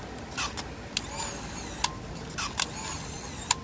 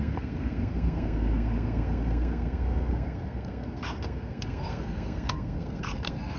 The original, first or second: first